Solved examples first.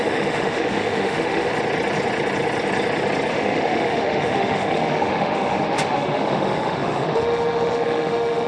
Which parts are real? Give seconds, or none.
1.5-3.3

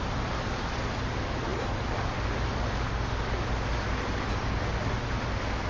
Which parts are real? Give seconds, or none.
0.0-5.7

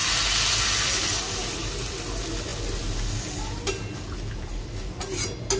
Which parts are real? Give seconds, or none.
0.0-5.6

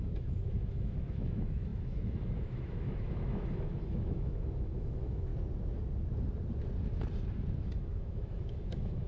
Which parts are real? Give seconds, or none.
5.3-7.6

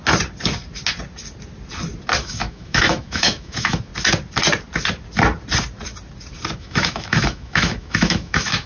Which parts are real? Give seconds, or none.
0.0-2.2; 3.9-6.6

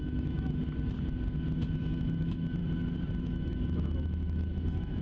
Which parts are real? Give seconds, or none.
0.6-1.9; 2.6-3.2

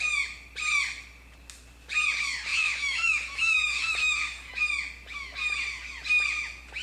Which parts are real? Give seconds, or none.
0.0-2.5; 4.5-6.8

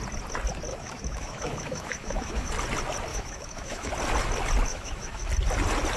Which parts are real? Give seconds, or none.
0.0-0.7; 2.5-3.1; 3.9-4.7; 5.3-6.0